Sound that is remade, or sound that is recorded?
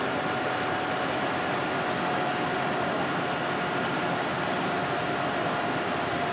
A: recorded